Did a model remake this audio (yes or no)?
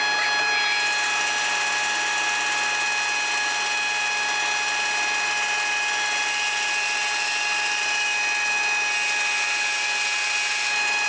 no